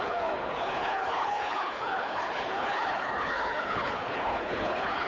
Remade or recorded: remade